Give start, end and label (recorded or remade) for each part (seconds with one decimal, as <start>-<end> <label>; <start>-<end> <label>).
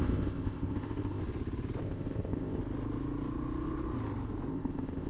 0.0-1.2 remade; 1.2-1.8 recorded; 1.8-2.6 remade; 2.6-4.5 recorded; 4.5-5.1 remade